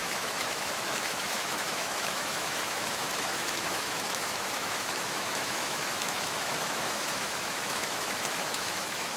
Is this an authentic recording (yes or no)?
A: no